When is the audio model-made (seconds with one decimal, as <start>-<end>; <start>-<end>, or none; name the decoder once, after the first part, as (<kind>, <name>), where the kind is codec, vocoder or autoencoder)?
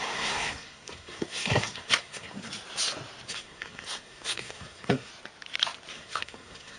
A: 0.0-2.5 (codec, SNAC); 3.3-5.1; 5.9-6.8